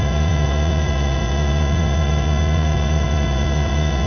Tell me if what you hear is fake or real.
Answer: fake